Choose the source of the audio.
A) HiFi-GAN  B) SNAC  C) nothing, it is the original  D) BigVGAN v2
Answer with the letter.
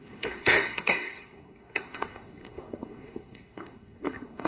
B